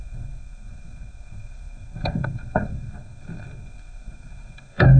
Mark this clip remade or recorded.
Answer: remade